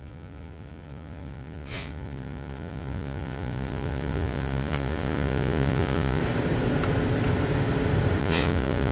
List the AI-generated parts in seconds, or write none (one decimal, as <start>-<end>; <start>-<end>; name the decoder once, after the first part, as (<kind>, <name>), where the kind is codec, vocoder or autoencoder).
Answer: 0.0-6.2 (vocoder, Vocos); 8.2-8.9